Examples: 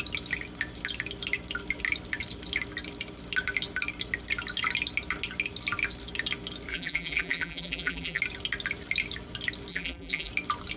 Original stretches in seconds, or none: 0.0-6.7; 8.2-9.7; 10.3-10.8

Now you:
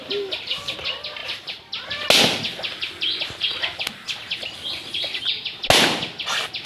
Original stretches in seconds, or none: 0.0-6.7

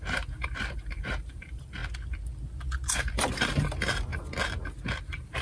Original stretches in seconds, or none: 1.8-2.9; 4.1-5.0

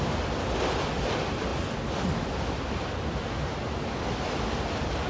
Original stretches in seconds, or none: 0.0-5.1